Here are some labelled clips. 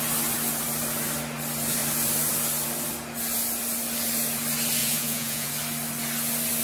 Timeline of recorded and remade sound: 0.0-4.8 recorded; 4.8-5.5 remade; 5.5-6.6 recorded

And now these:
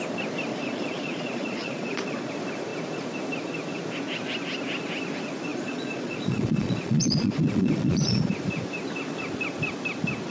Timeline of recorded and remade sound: 0.0-0.5 recorded; 0.5-2.3 remade; 2.3-5.5 recorded; 5.5-8.3 remade; 8.3-10.3 recorded

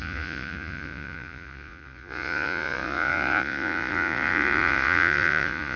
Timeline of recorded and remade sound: 0.0-5.8 remade

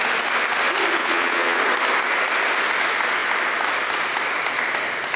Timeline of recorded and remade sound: 0.0-1.0 recorded; 1.0-1.6 remade; 1.6-5.2 recorded

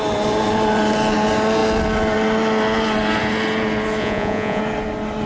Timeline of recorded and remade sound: 0.0-4.0 recorded; 4.0-4.6 remade; 4.6-5.3 recorded

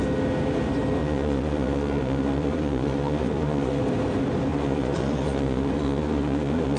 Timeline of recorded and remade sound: 0.0-1.0 recorded; 1.0-3.8 remade; 3.8-4.5 recorded; 4.5-6.8 remade

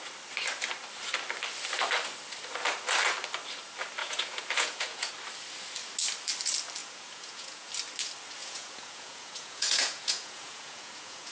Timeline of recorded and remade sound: 0.0-4.0 recorded; 4.0-5.1 remade; 5.1-6.8 recorded; 6.8-7.7 remade; 7.7-8.4 recorded; 8.4-11.3 remade